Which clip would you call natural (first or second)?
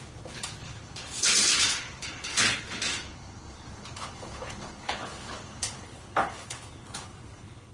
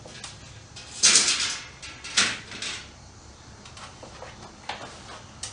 second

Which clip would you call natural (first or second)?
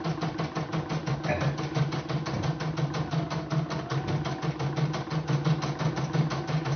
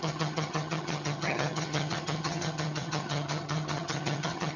first